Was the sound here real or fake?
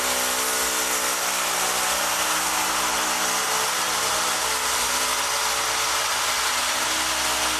real